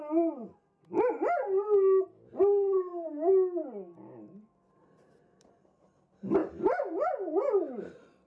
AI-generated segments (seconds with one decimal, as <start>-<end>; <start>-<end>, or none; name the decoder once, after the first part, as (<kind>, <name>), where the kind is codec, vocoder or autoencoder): 6.4-7.1 (vocoder, BigVGAN v2)